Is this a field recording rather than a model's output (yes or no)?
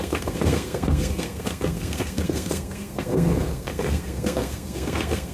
no